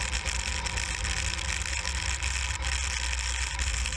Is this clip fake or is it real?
real